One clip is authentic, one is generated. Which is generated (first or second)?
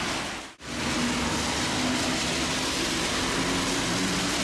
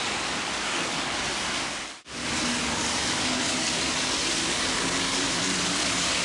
second